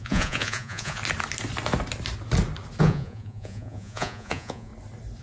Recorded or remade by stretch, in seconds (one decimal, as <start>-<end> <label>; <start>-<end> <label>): 0.0-1.0 remade; 1.0-2.8 recorded; 2.8-4.7 remade; 4.7-5.2 recorded